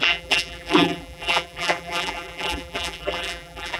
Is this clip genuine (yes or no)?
no